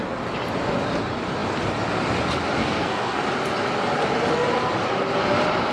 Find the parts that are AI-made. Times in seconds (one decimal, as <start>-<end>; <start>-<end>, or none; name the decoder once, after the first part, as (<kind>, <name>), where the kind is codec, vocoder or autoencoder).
2.6-3.2 (codec, SNAC)